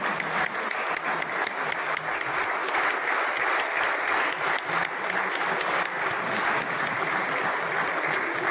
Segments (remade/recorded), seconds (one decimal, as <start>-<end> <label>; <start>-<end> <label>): 0.0-8.5 recorded